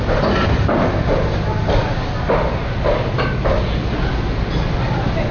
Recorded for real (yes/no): yes